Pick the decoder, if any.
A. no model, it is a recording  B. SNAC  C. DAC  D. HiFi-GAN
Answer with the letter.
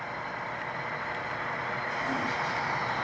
A